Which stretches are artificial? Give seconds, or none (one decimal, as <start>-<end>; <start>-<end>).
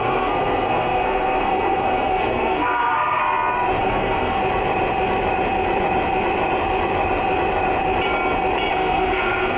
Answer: 0.0-3.2; 3.8-4.4; 8.7-9.6